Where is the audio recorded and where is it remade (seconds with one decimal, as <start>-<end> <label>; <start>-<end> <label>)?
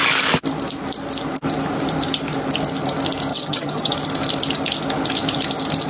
0.0-3.3 recorded; 3.3-3.9 remade; 3.9-5.9 recorded